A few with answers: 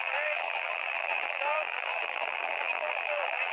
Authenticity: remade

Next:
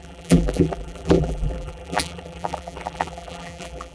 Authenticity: remade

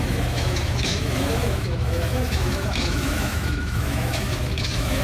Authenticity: remade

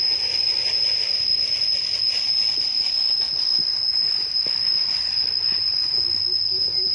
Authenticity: recorded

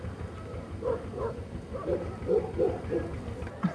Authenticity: recorded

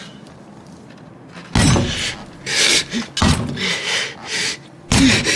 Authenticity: recorded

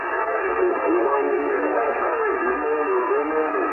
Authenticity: remade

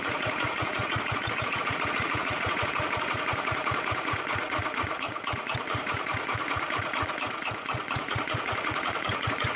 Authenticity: remade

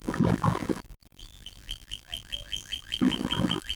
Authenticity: remade